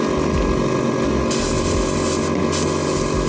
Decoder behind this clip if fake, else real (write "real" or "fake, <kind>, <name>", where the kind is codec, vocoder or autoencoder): real